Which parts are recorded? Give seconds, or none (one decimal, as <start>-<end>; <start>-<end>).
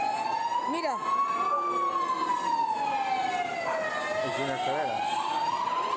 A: 0.0-6.0